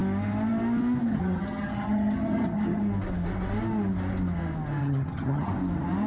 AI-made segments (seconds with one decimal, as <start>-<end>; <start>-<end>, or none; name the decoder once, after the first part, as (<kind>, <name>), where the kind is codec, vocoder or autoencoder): 1.1-2.8 (vocoder, HiFi-GAN); 4.8-5.5